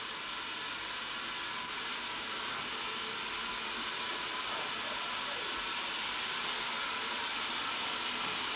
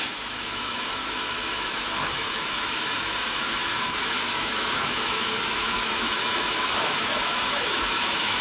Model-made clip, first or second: second